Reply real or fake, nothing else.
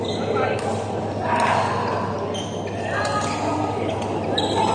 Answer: real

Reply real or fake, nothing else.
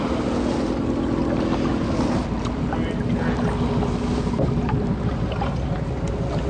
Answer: real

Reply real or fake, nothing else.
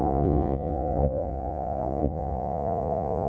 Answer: fake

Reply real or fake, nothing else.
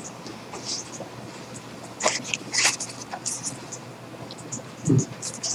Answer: real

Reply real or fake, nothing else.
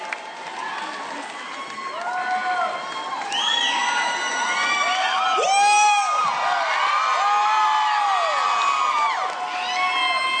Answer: real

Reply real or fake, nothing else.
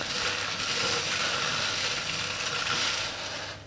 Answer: real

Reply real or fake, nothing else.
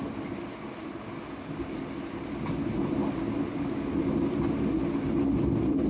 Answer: real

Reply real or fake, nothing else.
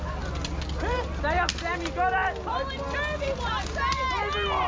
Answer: real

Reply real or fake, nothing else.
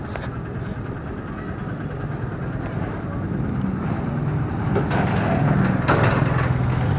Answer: real